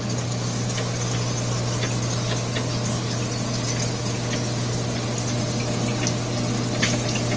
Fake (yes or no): no